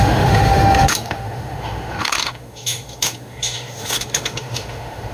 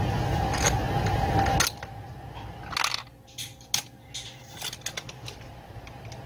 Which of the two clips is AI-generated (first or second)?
first